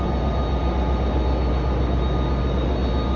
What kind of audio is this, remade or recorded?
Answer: recorded